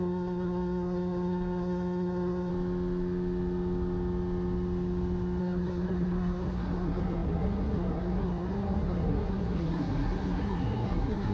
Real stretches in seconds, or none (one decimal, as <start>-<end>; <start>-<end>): 2.5-5.4